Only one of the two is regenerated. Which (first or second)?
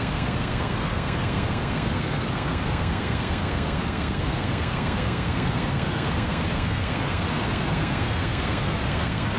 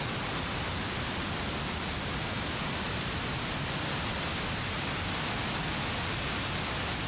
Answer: first